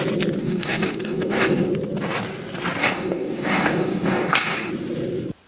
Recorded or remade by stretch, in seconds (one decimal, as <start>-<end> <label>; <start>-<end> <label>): 0.0-0.4 recorded; 0.4-1.7 remade; 1.7-2.8 recorded; 2.8-4.7 remade; 4.7-5.5 recorded